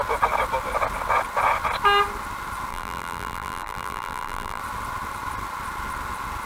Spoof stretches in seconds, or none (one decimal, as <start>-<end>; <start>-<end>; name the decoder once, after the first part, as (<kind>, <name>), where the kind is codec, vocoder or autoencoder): 2.7-4.6 (vocoder, BigVGAN v2)